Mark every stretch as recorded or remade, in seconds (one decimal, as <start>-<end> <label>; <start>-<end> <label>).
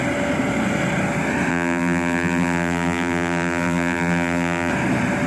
0.0-1.5 recorded; 1.5-4.7 remade; 4.7-5.3 recorded